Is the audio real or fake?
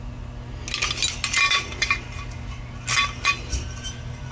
real